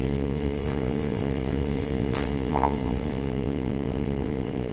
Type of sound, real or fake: fake